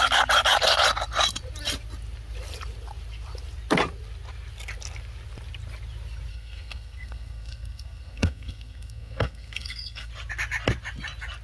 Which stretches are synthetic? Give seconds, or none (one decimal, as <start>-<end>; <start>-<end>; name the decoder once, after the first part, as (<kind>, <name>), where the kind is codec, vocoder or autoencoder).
6.3-10.1 (codec, SNAC)